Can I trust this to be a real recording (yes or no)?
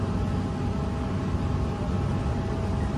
yes